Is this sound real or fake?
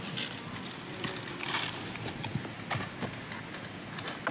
real